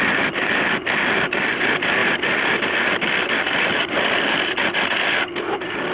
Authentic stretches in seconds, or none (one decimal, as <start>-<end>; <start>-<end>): 0.0-5.9